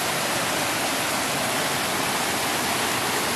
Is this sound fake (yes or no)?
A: no